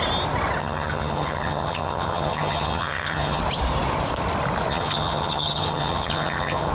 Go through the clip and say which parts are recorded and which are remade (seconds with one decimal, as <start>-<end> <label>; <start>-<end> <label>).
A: 0.0-0.6 recorded; 0.6-3.4 remade; 3.4-4.7 recorded; 4.7-6.7 remade